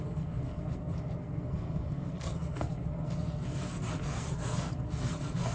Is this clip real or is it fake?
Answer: fake